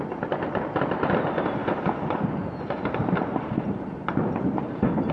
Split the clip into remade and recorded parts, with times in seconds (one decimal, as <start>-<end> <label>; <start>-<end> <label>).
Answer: 0.0-1.6 recorded; 1.6-5.1 remade